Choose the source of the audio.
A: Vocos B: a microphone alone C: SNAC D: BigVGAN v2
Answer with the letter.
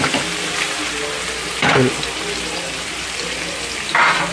B